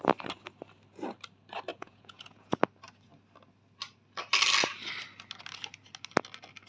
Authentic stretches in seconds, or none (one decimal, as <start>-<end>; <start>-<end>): 0.0-1.7; 2.6-6.7